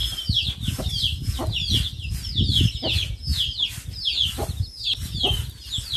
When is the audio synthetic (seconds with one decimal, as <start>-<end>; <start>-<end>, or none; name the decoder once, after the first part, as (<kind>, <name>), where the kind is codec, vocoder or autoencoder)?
none